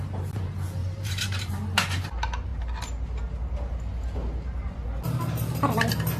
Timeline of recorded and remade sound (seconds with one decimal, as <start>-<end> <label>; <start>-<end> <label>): 0.0-0.8 recorded; 0.8-1.5 remade; 1.5-6.2 recorded